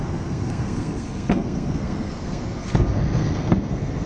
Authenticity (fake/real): fake